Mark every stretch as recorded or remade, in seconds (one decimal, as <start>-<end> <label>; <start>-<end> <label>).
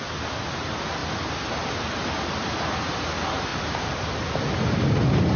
0.0-3.5 recorded; 3.5-5.4 remade